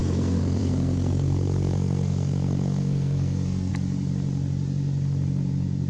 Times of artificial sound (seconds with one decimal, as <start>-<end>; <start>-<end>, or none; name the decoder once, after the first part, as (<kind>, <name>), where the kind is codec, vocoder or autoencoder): 0.0-3.7 (codec, SNAC)